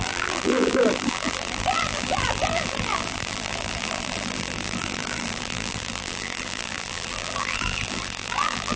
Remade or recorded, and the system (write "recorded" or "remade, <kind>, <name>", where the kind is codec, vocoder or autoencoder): remade, vocoder, BigVGAN v2